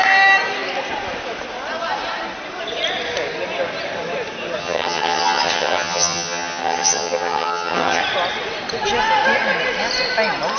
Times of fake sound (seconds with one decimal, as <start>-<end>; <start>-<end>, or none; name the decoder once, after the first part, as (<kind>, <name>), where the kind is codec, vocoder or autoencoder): 4.6-8.0 (vocoder, HiFi-GAN)